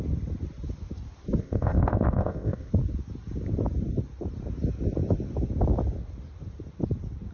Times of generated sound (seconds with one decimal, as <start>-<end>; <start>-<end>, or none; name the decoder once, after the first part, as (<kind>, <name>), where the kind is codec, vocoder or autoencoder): 1.4-2.7 (codec, ZipCodec)